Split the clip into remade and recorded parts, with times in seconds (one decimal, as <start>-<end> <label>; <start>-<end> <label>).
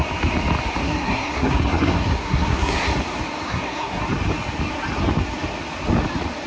0.0-0.8 recorded; 0.8-2.9 remade; 2.9-3.5 recorded; 3.5-4.0 remade; 4.0-6.5 recorded